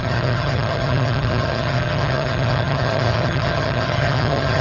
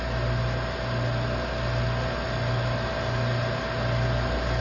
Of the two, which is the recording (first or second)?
second